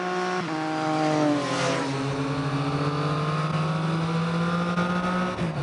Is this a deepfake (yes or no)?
no